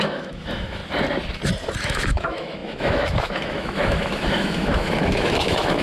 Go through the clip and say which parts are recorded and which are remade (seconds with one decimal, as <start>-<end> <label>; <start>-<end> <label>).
0.0-0.8 remade; 0.8-1.8 recorded; 1.8-5.8 remade